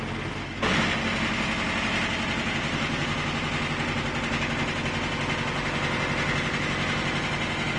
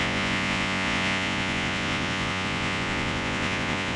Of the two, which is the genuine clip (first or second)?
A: first